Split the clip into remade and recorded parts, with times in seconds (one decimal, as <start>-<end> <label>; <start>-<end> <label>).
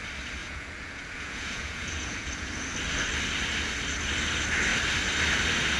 0.0-0.4 recorded; 0.4-2.5 remade; 2.5-5.8 recorded